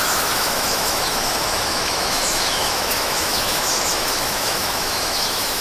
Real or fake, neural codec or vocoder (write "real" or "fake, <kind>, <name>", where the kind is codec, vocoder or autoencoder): fake, autoencoder, DAC-VAE